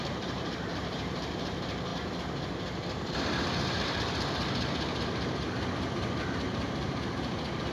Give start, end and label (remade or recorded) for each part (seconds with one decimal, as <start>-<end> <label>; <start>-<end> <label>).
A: 0.0-1.9 remade; 1.9-6.2 recorded; 6.2-7.7 remade